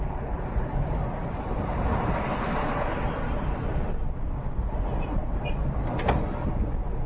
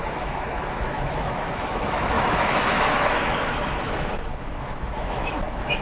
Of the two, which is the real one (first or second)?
first